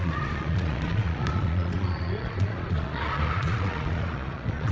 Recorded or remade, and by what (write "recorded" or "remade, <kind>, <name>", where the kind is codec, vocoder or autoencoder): remade, vocoder, Vocos